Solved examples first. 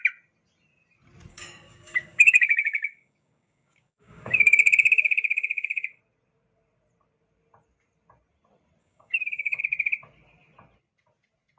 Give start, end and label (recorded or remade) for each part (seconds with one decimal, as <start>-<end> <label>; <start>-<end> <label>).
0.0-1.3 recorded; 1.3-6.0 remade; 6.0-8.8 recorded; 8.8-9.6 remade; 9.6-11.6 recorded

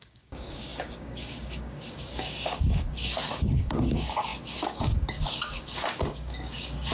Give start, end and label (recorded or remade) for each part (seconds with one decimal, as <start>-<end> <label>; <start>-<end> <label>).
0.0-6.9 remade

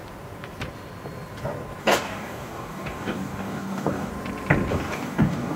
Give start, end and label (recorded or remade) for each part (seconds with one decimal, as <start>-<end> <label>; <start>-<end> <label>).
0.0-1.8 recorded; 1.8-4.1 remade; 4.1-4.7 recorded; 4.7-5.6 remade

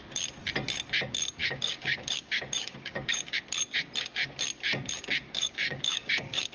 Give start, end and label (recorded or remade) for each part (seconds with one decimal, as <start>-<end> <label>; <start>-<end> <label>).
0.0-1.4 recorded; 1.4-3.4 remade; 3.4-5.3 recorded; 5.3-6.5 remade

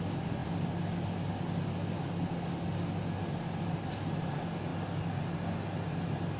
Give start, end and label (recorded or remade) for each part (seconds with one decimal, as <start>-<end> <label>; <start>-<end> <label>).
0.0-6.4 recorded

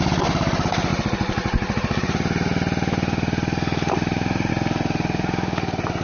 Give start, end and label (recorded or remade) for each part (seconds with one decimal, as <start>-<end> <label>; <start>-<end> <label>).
0.0-6.0 recorded

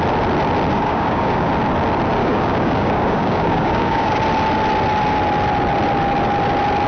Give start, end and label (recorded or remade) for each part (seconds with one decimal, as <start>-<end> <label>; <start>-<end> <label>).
0.0-0.7 recorded; 0.7-1.5 remade; 1.5-2.2 recorded; 2.2-4.2 remade; 4.2-6.9 recorded

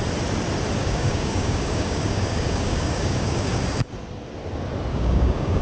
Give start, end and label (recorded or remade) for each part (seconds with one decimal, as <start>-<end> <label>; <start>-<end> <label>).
0.0-0.8 recorded; 0.8-3.6 remade; 3.6-4.9 recorded; 4.9-5.6 remade